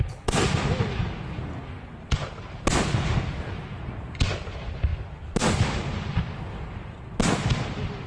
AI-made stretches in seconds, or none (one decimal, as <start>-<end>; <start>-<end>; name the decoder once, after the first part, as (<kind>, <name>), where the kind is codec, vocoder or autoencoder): none